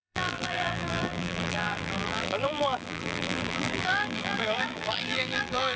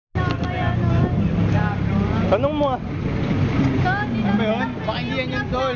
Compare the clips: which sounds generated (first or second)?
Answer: first